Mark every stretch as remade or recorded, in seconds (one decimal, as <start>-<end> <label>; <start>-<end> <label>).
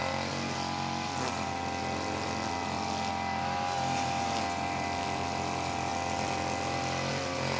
0.0-7.6 recorded